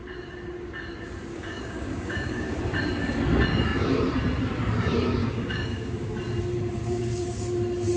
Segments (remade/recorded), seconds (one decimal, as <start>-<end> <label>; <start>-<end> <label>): 0.0-1.3 recorded; 1.3-2.6 remade; 2.6-5.2 recorded; 5.2-6.1 remade; 6.1-6.8 recorded; 6.8-7.4 remade; 7.4-8.0 recorded